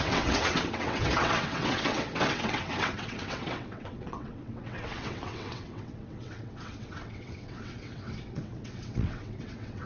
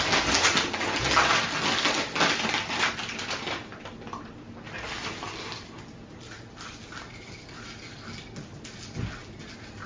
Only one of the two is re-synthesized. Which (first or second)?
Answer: first